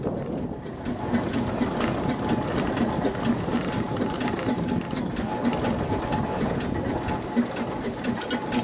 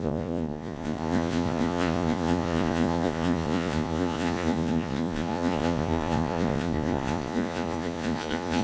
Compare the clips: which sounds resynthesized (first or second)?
second